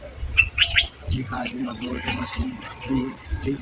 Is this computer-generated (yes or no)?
yes